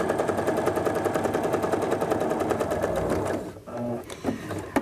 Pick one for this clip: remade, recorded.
recorded